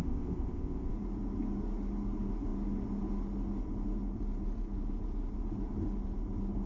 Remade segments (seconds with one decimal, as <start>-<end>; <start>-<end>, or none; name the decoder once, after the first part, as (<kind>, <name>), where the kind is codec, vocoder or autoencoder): 0.0-0.9 (codec, ZipCodec)